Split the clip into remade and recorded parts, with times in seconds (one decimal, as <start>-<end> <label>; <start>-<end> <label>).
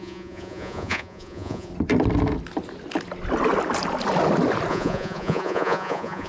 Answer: 0.0-1.7 remade; 1.7-4.7 recorded; 4.7-6.3 remade